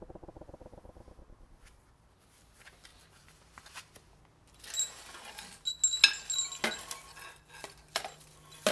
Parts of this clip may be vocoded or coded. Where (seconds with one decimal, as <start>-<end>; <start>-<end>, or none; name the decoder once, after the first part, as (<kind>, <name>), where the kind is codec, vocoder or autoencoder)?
2.9-3.9 (vocoder, BigVGAN v2)